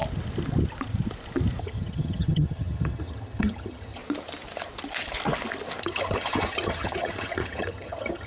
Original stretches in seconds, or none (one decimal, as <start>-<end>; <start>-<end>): 0.0-1.6; 4.0-5.8